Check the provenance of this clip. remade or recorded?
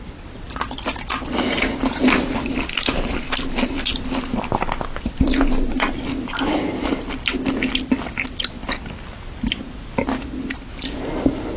recorded